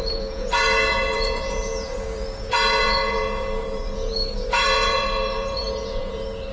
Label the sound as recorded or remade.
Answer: remade